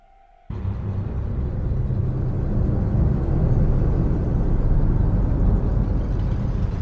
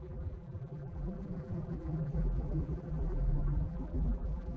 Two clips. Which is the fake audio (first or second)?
second